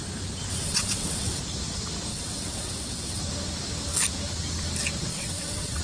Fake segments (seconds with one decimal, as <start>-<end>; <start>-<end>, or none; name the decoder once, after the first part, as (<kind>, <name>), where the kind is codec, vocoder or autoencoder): 0.5-1.4 (vocoder, WaveNeXt); 2.1-3.2; 5.1-5.8